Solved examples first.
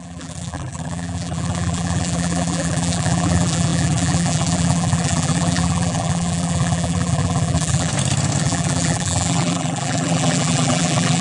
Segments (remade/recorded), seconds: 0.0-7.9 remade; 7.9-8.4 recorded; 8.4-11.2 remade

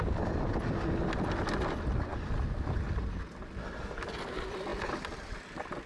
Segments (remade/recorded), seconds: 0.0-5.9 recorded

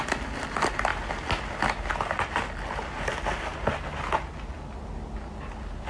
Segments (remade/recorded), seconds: 0.0-5.9 recorded

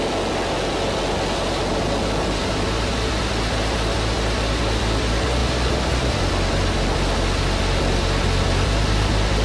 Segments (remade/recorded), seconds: 0.0-2.4 recorded; 2.4-3.2 remade; 3.2-5.4 recorded; 5.4-6.2 remade; 6.2-9.4 recorded

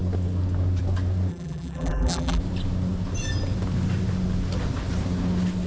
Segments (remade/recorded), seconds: 0.0-1.3 recorded; 1.3-2.4 remade; 2.4-5.7 recorded

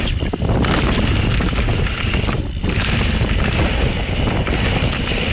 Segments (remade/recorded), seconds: 0.0-1.7 recorded; 1.7-5.3 remade